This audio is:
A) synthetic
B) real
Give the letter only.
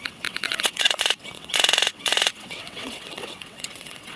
A